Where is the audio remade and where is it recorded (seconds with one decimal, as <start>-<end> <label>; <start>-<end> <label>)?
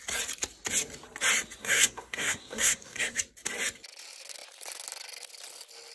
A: 0.0-1.6 recorded; 1.6-3.2 remade; 3.2-5.9 recorded